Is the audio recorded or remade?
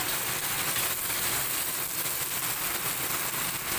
recorded